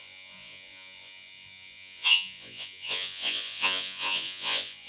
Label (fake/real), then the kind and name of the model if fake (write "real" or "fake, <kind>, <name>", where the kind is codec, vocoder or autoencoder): fake, vocoder, Vocos